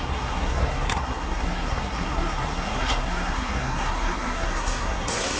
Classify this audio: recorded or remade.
remade